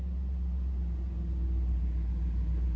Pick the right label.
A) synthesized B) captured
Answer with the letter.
B